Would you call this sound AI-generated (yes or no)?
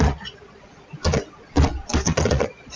yes